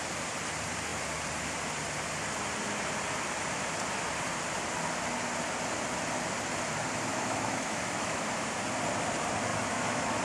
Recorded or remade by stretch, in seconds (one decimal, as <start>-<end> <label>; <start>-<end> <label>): 0.0-7.1 recorded; 7.1-8.3 remade; 8.3-9.5 recorded; 9.5-10.2 remade